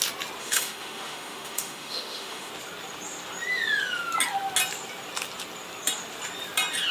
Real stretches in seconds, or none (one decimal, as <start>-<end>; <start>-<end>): 0.0-0.4; 2.5-6.9

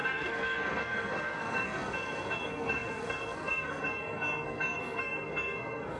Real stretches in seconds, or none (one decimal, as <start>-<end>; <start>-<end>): none

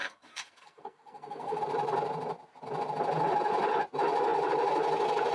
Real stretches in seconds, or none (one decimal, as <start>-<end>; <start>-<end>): 1.6-5.3

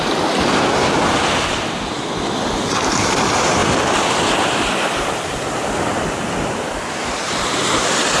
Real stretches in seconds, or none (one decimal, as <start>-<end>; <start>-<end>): 0.0-8.2

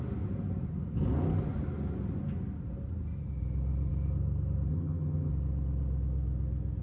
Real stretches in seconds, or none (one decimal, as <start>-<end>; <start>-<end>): 0.0-4.7; 5.3-6.8

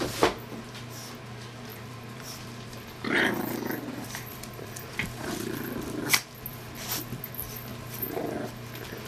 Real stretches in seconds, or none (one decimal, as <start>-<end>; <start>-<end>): 0.0-1.7; 7.0-9.1